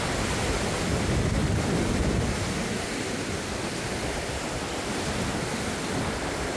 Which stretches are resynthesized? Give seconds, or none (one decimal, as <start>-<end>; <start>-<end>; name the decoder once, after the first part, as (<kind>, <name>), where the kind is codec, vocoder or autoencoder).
none